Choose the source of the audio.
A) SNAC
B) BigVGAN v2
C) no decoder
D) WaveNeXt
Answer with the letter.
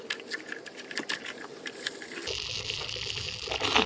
C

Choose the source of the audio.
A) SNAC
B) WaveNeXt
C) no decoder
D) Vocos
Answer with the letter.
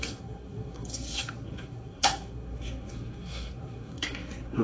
A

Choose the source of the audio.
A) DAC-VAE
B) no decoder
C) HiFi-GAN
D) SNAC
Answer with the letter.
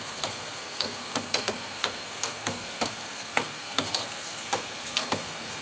D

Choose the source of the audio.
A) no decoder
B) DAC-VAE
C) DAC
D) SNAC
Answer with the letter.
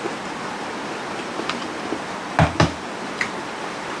A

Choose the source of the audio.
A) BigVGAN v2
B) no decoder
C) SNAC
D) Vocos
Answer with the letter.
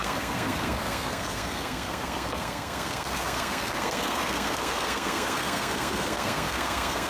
C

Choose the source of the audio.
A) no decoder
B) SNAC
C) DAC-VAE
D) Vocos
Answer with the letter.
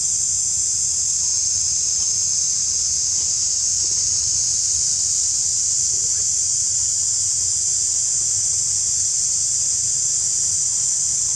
A